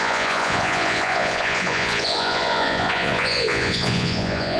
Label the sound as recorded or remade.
remade